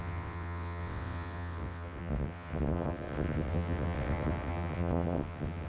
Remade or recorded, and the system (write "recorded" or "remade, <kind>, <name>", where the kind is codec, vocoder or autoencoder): remade, vocoder, WaveNeXt